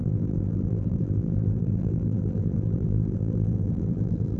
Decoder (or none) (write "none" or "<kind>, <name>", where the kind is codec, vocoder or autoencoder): vocoder, BigVGAN v2